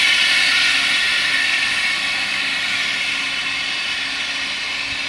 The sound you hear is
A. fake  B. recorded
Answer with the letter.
B